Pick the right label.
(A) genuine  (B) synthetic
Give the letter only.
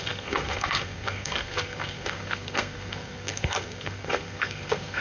B